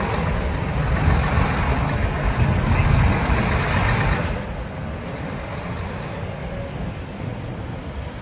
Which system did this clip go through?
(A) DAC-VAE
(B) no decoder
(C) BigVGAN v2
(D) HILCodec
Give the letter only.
B